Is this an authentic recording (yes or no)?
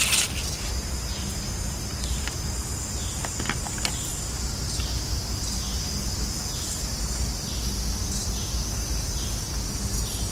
yes